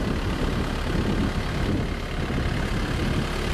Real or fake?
real